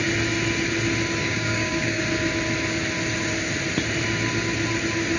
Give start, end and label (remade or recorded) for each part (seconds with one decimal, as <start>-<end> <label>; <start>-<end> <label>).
0.0-1.2 recorded; 1.2-2.0 remade; 2.0-5.2 recorded